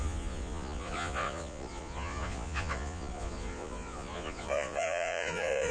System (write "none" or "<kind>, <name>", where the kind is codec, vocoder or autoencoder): vocoder, Vocos